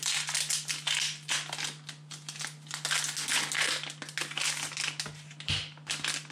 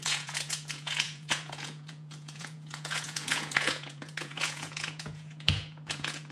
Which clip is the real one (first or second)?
first